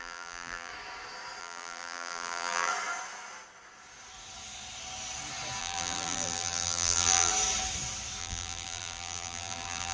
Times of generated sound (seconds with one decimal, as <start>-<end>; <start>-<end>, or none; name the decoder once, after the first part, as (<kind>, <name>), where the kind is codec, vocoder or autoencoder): 0.0-0.7 (vocoder, BigVGAN v2); 1.4-2.7; 5.6-7.3; 8.2-9.9